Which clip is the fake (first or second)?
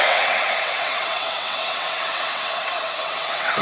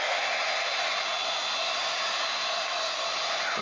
first